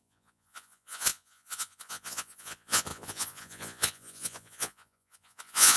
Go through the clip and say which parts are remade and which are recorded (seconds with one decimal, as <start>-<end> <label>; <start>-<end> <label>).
0.0-5.8 remade